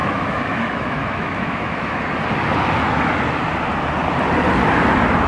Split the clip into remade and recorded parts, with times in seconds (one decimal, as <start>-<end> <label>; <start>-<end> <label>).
0.0-2.0 remade; 2.0-5.3 recorded

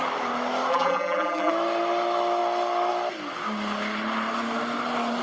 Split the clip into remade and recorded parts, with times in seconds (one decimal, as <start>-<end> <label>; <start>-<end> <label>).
0.0-0.7 recorded; 0.7-1.5 remade; 1.5-5.2 recorded